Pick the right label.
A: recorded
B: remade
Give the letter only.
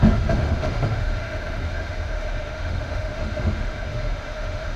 B